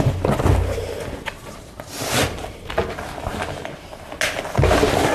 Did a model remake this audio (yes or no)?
no